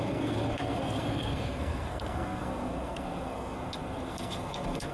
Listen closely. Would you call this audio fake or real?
fake